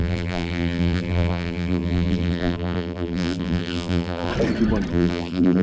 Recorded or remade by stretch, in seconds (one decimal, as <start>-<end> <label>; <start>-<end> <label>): 0.0-4.3 remade; 4.3-4.9 recorded; 4.9-5.6 remade